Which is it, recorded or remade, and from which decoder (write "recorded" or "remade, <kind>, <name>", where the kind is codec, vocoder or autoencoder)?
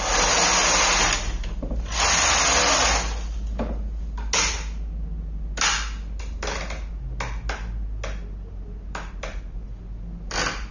recorded